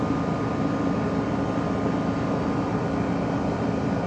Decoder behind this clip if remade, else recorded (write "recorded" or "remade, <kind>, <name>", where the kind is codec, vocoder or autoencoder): recorded